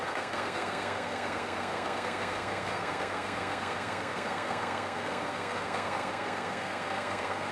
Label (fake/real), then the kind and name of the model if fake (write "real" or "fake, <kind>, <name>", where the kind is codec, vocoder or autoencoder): fake, codec, SNAC